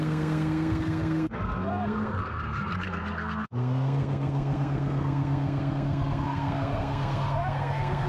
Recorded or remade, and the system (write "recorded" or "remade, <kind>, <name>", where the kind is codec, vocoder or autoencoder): remade, codec, SNAC